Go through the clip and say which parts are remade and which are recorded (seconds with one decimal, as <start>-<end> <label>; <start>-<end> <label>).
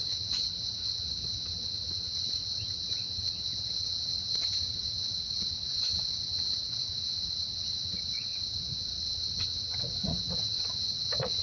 0.0-11.4 remade